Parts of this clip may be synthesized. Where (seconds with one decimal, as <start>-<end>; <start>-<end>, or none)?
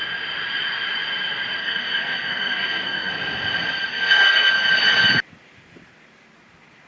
1.6-3.1; 3.9-4.5